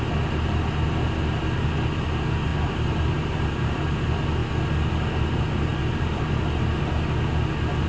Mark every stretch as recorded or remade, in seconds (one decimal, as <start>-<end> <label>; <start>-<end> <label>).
0.0-2.5 recorded; 2.5-3.8 remade; 3.8-5.7 recorded; 5.7-6.4 remade; 6.4-7.9 recorded